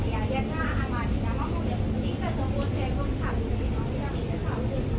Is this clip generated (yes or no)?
no